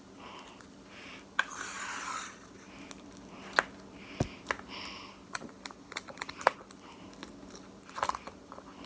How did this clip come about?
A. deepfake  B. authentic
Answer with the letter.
B